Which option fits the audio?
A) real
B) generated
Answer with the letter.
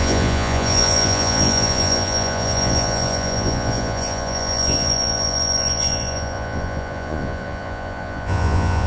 B